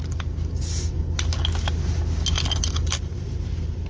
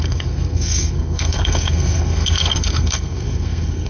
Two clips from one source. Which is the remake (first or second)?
second